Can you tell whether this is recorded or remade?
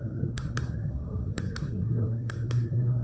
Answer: remade